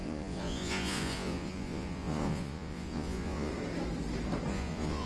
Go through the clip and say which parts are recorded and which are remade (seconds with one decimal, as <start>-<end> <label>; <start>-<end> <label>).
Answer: 0.0-3.5 remade; 3.5-4.5 recorded; 4.5-5.1 remade